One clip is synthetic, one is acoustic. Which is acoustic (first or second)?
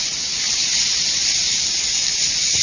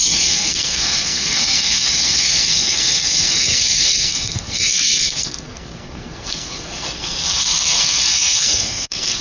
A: first